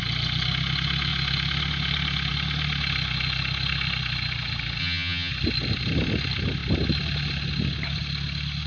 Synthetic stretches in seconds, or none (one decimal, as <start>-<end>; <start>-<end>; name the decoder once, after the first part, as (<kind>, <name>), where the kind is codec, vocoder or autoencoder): 4.8-5.3 (vocoder, HiFi-GAN)